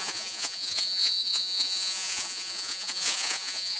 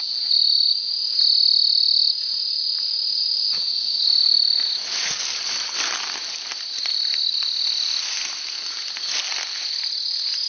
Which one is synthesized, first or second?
first